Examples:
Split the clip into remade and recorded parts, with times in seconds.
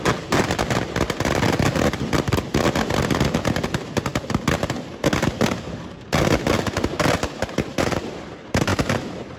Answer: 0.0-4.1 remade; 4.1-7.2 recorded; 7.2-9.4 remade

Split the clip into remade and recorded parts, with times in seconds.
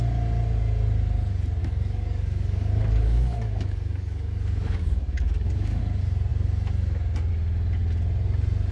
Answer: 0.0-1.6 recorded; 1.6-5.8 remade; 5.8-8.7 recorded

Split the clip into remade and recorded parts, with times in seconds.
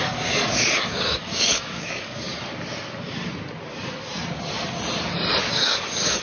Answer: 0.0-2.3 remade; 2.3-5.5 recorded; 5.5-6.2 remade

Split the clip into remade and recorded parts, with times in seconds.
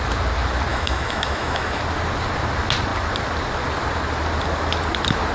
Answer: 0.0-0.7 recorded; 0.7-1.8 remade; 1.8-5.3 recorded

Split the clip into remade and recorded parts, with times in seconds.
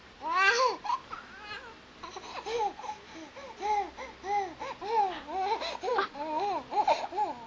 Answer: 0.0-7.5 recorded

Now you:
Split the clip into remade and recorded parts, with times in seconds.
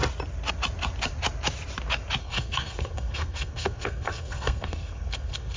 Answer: 0.0-2.2 recorded; 2.2-5.6 remade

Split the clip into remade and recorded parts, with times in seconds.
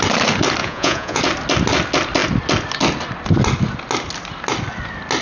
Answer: 0.0-0.6 recorded; 0.6-1.2 remade; 1.2-5.2 recorded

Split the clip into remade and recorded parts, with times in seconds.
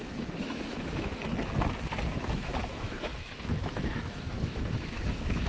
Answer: 0.0-1.2 remade; 1.2-2.1 recorded; 2.1-5.5 remade